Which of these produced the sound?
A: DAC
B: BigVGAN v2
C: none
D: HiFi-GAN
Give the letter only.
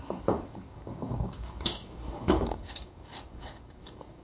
A